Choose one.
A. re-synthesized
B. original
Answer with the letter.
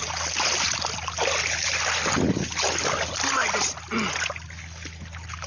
B